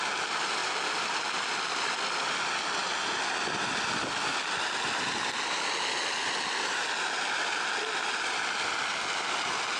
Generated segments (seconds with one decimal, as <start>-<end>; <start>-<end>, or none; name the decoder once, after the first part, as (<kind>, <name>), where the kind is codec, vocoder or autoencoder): none